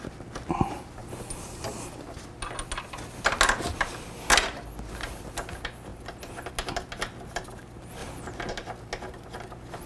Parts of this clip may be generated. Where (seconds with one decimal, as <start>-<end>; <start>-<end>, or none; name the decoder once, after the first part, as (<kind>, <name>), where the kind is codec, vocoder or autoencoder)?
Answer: none